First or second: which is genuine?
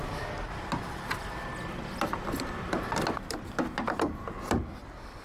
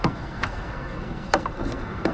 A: first